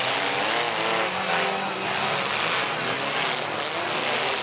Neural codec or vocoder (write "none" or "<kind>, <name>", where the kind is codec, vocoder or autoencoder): none